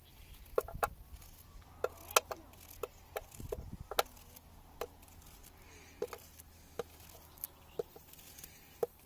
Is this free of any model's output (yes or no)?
yes